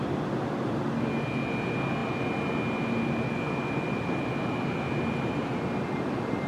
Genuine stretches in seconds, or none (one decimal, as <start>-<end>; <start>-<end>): 0.0-6.5